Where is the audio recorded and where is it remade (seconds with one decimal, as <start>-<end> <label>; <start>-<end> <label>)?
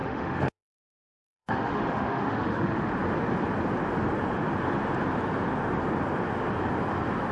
0.0-2.9 remade; 2.9-7.3 recorded